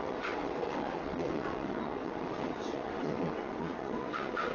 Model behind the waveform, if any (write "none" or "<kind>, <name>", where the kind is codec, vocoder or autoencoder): vocoder, WaveNeXt